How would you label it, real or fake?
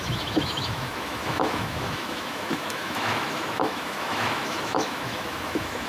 fake